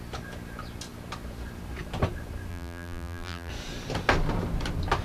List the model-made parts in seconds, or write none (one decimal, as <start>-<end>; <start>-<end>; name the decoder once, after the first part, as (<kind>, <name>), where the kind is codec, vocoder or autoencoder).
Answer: 2.5-3.5 (vocoder, BigVGAN v2)